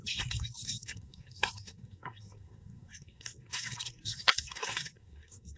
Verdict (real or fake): fake